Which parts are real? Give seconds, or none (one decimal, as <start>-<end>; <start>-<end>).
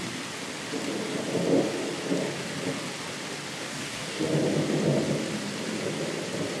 0.0-3.6; 4.2-6.6